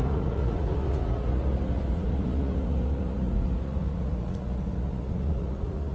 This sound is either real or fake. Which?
fake